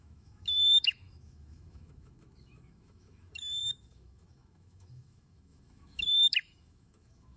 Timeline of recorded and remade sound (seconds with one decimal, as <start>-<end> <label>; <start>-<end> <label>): 0.0-7.4 remade